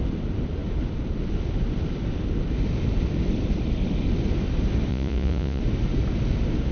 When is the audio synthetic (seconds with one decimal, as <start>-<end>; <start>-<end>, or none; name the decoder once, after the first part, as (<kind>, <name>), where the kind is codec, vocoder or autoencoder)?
4.9-5.6 (vocoder, Vocos)